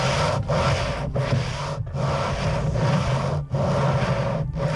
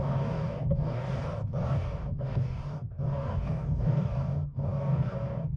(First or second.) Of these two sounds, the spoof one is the second